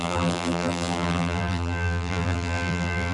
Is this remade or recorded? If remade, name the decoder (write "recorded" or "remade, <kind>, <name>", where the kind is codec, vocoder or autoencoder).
remade, vocoder, BigVGAN v2